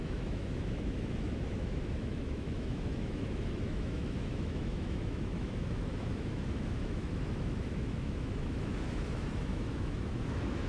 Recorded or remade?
remade